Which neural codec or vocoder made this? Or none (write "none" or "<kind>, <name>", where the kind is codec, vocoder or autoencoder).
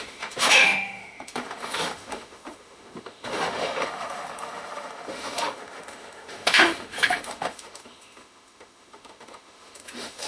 autoencoder, DAC-VAE